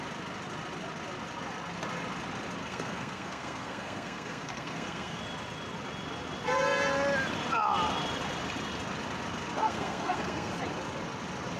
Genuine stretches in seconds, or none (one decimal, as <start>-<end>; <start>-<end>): 0.0-2.6; 5.2-9.6; 10.5-11.6